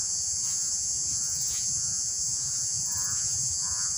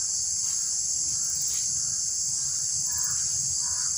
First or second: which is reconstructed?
first